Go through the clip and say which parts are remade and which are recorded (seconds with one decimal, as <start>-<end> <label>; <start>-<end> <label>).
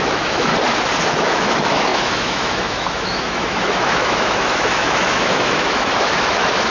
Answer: 0.0-0.5 remade; 0.5-1.2 recorded; 1.2-6.7 remade